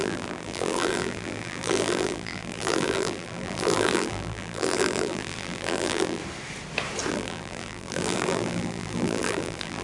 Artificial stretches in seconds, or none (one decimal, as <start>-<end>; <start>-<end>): 0.0-6.2; 7.1-9.8